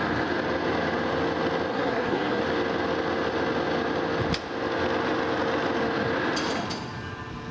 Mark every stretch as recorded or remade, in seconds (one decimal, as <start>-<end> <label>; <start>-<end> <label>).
0.0-1.7 recorded; 1.7-2.4 remade; 2.4-7.5 recorded